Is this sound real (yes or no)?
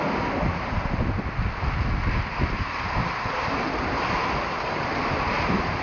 yes